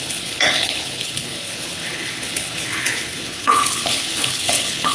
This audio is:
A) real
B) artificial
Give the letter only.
B